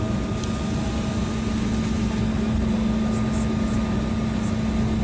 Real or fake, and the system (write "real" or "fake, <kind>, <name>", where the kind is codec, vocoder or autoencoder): real